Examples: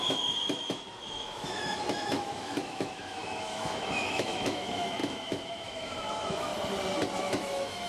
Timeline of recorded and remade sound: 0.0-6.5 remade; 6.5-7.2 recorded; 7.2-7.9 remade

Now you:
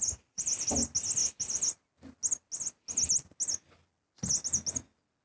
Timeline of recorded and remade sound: 0.0-0.7 remade; 0.7-5.2 recorded

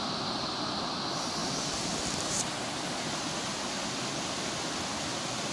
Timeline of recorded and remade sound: 0.0-1.4 recorded; 1.4-2.5 remade; 2.5-5.5 recorded

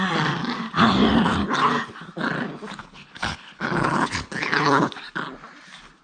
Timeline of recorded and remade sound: 0.0-2.8 recorded; 2.8-4.9 remade; 4.9-6.0 recorded

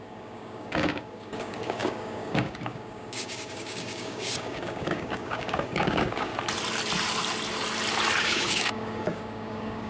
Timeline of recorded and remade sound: 0.0-6.3 remade; 6.3-8.2 recorded; 8.2-9.9 remade

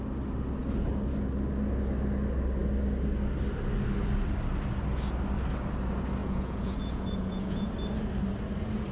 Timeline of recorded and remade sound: 0.0-6.2 recorded; 6.2-7.7 remade; 7.7-8.9 recorded

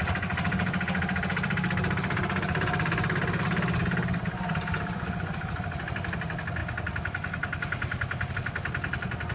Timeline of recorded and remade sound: 0.0-9.3 recorded

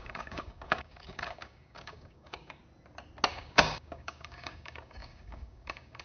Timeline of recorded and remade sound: 0.0-2.6 remade; 2.6-3.3 recorded; 3.3-6.0 remade